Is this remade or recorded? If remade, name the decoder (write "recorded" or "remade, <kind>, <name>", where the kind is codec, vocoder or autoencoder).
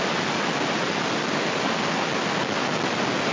recorded